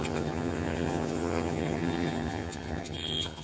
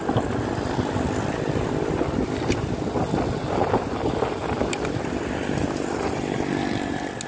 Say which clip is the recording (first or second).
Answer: second